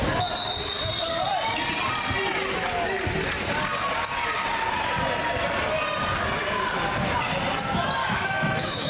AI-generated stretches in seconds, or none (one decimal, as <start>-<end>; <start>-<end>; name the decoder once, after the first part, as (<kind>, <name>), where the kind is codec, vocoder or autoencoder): 8.0-8.9 (autoencoder, DAC-VAE)